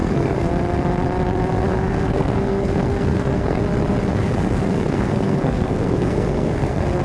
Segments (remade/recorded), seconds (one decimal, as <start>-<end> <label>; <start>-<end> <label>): 0.0-0.5 remade; 0.5-1.7 recorded; 1.7-3.6 remade; 3.6-4.1 recorded; 4.1-7.0 remade